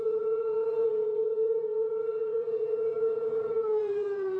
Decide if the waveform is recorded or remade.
remade